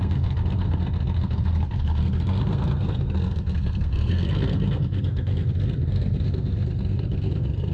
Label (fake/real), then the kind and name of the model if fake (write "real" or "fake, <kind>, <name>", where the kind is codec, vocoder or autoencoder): fake, codec, SNAC